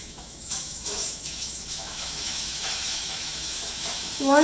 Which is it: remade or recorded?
remade